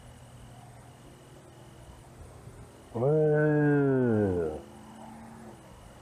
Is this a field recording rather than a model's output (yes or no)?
yes